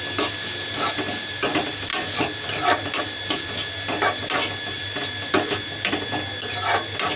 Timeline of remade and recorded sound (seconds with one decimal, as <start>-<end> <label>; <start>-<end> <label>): 0.0-7.2 recorded